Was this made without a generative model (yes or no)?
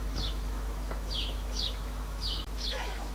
no